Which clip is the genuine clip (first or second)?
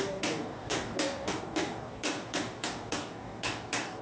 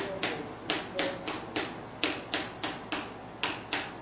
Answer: second